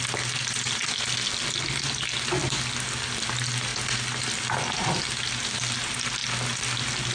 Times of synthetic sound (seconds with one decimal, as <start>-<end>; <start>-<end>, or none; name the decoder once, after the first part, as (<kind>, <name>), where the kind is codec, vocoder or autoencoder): none